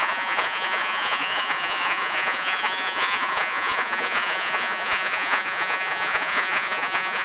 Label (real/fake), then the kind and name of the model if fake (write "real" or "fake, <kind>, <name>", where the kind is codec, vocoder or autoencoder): fake, vocoder, Vocos